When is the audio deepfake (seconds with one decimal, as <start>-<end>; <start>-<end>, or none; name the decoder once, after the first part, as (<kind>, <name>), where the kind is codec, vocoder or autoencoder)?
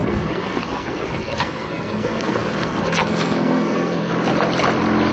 0.0-4.1 (codec, SNAC)